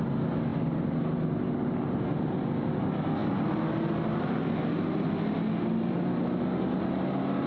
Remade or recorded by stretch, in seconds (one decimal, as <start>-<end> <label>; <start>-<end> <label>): 0.0-7.5 recorded